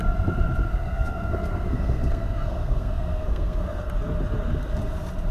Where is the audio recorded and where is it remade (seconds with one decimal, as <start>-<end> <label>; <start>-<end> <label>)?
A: 0.0-0.7 recorded; 0.7-3.9 remade; 3.9-5.3 recorded